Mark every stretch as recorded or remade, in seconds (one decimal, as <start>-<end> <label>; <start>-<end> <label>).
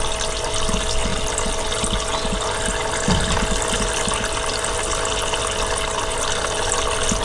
0.0-7.2 recorded